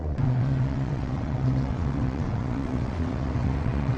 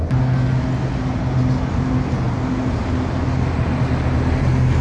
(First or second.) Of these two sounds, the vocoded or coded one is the first